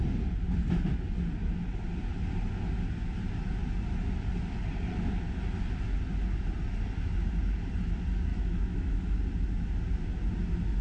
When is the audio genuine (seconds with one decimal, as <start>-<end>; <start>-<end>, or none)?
0.0-8.3; 9.2-10.8